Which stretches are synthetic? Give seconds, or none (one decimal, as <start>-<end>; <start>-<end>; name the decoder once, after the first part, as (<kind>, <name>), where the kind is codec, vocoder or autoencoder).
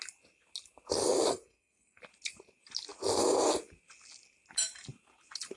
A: 1.3-2.0 (codec, SNAC)